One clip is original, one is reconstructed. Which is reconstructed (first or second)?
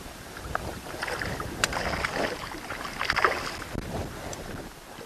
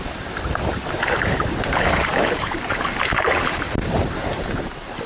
second